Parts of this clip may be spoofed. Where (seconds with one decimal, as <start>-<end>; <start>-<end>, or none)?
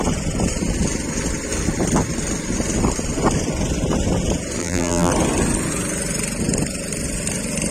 4.6-5.1